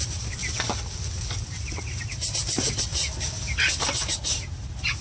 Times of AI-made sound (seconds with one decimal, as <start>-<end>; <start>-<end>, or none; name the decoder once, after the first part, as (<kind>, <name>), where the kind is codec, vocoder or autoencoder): 0.0-0.4 (vocoder, BigVGAN v2); 1.4-2.9; 3.7-5.0